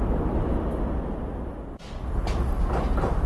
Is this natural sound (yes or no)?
yes